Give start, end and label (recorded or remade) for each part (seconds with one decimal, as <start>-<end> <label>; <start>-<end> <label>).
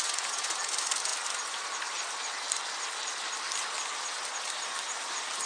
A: 0.0-5.5 recorded